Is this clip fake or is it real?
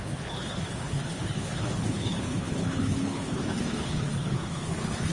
fake